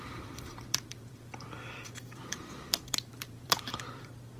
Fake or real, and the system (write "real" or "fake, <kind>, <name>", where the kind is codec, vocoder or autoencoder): fake, vocoder, BigVGAN v2